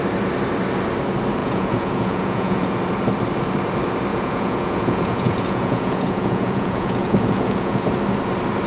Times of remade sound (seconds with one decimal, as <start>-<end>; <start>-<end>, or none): 1.4-2.7; 4.1-7.9